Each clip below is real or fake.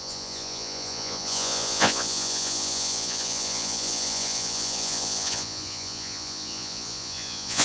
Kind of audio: fake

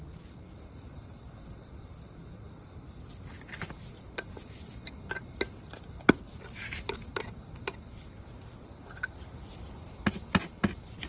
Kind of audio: real